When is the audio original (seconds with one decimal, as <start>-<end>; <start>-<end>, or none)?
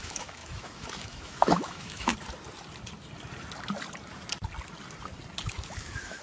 2.1-5.5